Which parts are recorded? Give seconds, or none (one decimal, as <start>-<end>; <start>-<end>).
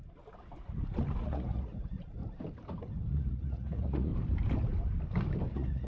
0.0-1.2; 2.2-3.1; 4.1-5.5